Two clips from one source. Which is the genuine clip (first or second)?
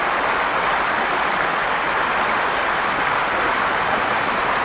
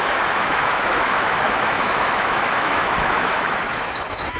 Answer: first